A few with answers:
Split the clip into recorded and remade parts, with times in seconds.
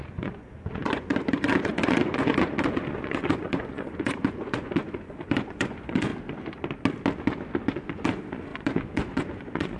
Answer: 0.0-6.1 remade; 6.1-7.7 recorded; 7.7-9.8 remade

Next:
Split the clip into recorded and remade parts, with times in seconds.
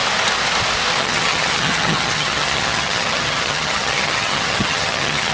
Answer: 0.0-1.0 recorded; 1.0-5.3 remade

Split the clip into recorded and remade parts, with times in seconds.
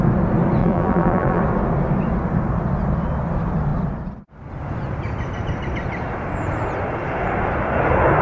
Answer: 0.0-0.6 recorded; 0.6-1.4 remade; 1.4-8.2 recorded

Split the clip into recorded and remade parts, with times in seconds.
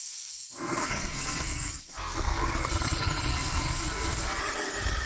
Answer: 0.0-2.7 remade; 2.7-3.3 recorded; 3.3-4.4 remade; 4.4-5.1 recorded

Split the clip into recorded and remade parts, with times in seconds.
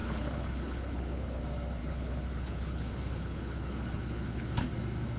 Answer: 0.0-1.4 remade; 1.4-1.8 recorded; 1.8-4.7 remade; 4.7-5.2 recorded